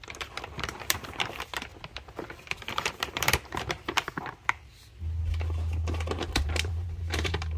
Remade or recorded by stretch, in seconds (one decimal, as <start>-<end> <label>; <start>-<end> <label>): 0.0-1.7 remade; 1.7-2.7 recorded; 2.7-4.7 remade; 4.7-6.4 recorded; 6.4-7.6 remade